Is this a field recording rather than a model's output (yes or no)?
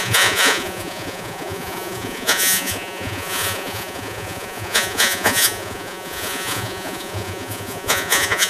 no